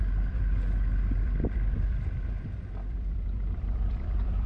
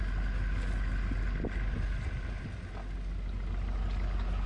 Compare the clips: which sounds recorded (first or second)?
second